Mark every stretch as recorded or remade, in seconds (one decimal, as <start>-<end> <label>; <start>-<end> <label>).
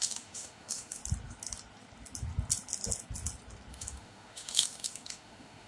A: 0.0-1.0 remade; 1.0-3.7 recorded; 3.7-5.7 remade